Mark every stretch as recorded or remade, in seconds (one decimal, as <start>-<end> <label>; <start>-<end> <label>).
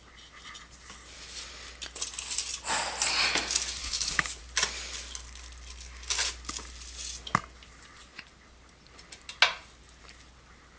0.0-3.8 recorded; 3.8-4.4 remade; 4.4-10.8 recorded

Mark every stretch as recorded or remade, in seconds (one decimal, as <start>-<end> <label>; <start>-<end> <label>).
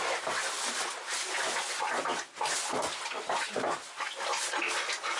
0.0-5.2 recorded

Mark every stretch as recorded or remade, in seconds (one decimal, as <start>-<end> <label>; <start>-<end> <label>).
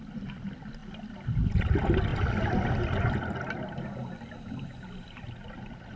0.0-6.0 recorded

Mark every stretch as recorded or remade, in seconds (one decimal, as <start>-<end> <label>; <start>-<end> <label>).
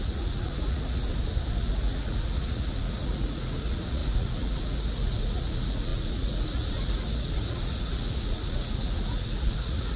0.0-1.1 remade; 1.1-1.6 recorded; 1.6-10.0 remade